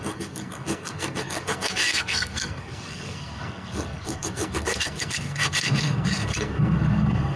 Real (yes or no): no